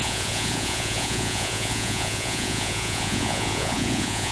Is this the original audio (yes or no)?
no